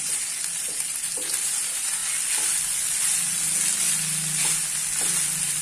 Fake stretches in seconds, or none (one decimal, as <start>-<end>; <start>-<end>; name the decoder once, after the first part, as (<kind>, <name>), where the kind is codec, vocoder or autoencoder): 0.0-2.0 (vocoder, BigVGAN v2)